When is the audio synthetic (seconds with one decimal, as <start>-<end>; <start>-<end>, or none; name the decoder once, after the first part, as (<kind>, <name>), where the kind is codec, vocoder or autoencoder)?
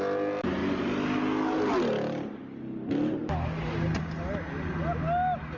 none